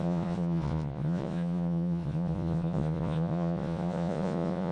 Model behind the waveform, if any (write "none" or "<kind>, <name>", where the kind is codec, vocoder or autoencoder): vocoder, Vocos